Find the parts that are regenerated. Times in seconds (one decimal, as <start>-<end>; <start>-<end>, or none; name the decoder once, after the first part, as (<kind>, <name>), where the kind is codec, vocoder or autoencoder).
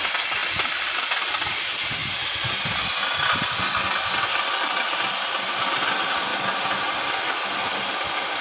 0.0-6.3 (vocoder, BigVGAN v2); 7.2-8.4